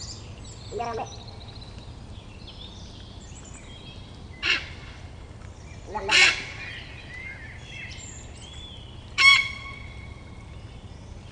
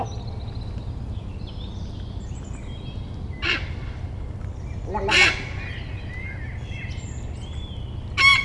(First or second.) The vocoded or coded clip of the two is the first